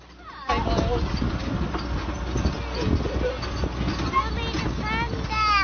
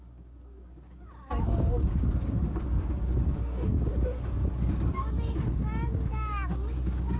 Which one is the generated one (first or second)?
second